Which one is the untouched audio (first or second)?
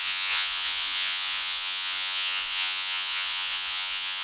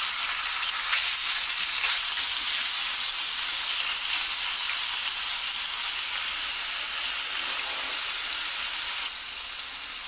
second